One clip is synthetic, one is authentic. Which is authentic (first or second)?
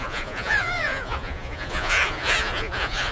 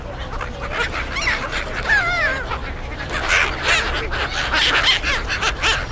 second